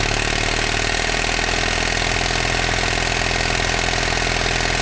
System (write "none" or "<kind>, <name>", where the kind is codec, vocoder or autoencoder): none